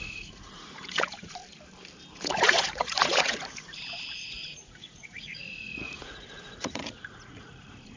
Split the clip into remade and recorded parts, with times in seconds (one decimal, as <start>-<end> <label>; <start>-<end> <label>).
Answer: 0.0-1.4 remade; 1.4-2.1 recorded; 2.1-8.0 remade